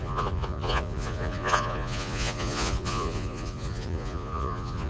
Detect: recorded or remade remade